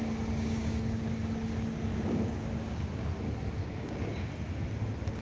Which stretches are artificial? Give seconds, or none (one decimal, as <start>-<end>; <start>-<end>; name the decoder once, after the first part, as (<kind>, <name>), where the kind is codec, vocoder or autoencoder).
0.0-3.1 (codec, DAC); 3.6-4.3